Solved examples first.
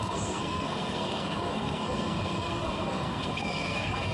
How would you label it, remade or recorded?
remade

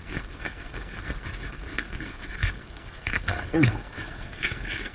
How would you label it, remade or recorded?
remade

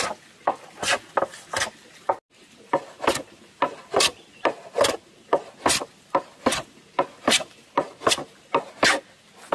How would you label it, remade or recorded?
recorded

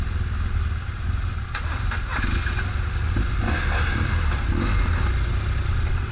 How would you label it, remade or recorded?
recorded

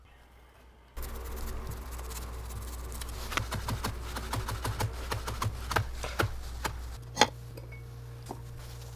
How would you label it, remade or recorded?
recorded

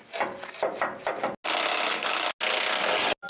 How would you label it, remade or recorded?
recorded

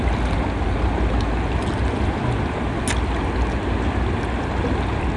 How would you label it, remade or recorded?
recorded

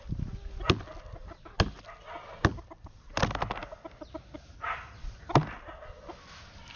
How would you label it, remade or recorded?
recorded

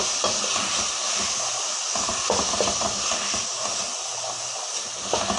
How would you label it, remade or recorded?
recorded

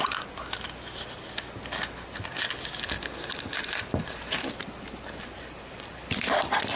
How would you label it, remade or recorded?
recorded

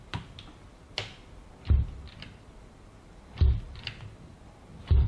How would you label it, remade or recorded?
recorded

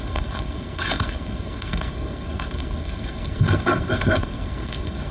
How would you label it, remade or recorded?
remade